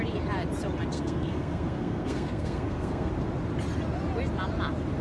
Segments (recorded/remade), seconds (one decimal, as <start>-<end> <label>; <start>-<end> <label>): 0.0-0.9 recorded; 0.9-3.1 remade; 3.1-5.0 recorded